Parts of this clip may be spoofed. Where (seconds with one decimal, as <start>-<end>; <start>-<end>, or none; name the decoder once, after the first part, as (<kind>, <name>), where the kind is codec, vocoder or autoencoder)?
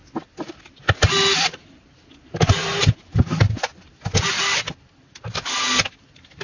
none